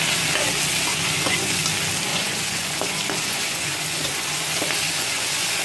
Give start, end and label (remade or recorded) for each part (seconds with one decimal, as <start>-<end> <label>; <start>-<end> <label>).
0.0-0.9 recorded; 0.9-1.6 remade; 1.6-2.1 recorded; 2.1-5.6 remade